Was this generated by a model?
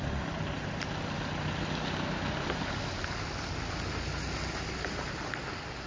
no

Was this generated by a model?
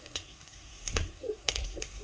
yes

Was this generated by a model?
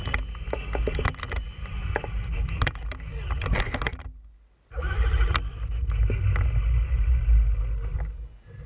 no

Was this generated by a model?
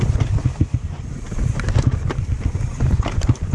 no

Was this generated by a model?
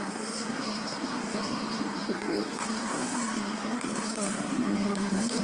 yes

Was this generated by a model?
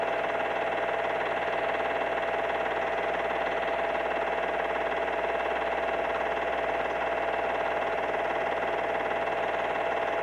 no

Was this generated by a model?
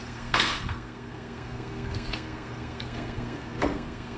yes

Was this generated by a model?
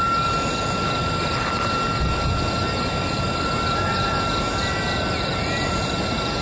no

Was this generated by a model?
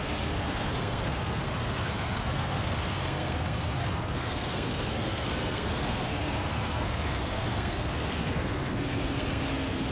yes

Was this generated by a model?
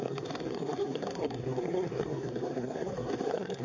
yes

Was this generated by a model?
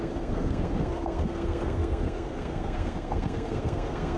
yes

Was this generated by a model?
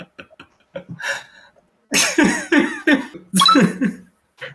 no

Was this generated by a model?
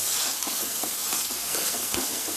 yes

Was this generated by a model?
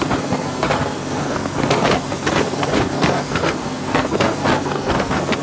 yes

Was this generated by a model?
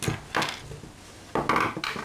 no